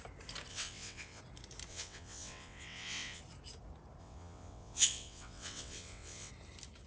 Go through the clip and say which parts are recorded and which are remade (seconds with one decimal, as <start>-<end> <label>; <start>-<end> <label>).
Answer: 0.0-0.5 recorded; 0.5-1.2 remade; 1.2-1.7 recorded; 1.7-3.2 remade; 3.2-4.0 recorded; 4.0-6.3 remade; 6.3-6.9 recorded